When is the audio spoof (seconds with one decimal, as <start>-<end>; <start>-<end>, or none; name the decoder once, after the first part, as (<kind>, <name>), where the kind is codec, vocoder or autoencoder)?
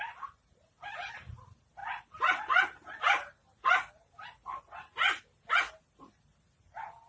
none